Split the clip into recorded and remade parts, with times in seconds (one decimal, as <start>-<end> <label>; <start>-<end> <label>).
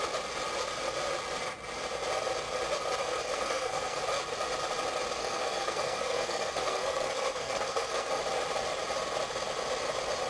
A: 0.0-3.0 recorded; 3.0-4.0 remade; 4.0-5.2 recorded; 5.2-8.1 remade; 8.1-10.3 recorded